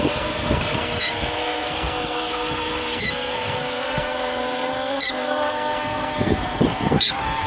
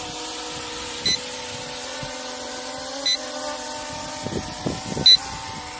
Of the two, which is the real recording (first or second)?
second